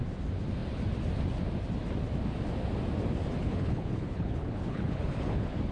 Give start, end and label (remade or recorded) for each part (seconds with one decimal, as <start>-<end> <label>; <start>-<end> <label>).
0.0-3.4 recorded; 3.4-5.7 remade